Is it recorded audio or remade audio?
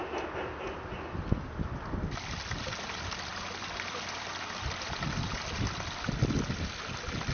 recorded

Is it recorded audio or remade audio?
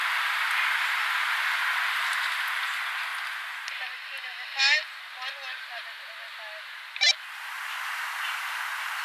recorded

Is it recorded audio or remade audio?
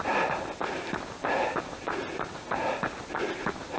recorded